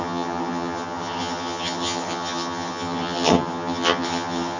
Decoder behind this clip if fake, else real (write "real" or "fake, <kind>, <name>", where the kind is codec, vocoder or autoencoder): fake, vocoder, HiFi-GAN